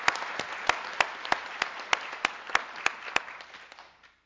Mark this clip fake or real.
real